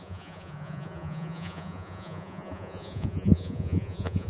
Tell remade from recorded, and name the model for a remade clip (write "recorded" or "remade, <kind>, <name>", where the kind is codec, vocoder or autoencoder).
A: remade, vocoder, Vocos